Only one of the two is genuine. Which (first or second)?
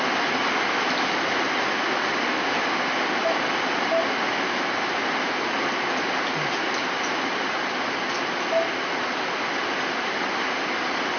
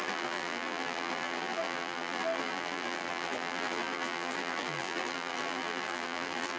first